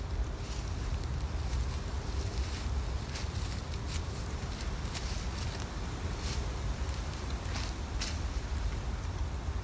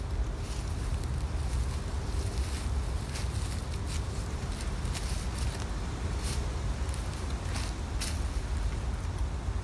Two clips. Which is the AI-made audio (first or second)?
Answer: first